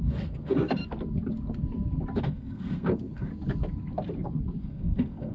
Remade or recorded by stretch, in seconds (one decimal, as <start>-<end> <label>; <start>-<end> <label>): 0.0-0.8 remade; 0.8-2.2 recorded; 2.2-3.3 remade; 3.3-4.6 recorded; 4.6-5.3 remade